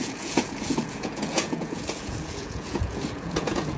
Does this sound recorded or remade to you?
remade